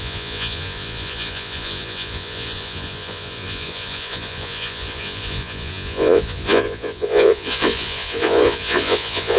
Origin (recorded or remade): remade